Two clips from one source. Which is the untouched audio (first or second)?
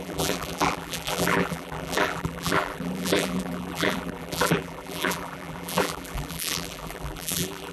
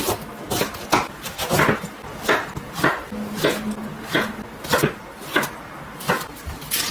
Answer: second